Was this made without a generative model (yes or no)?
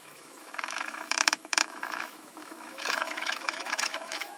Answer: no